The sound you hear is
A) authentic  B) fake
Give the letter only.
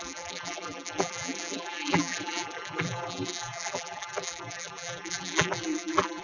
B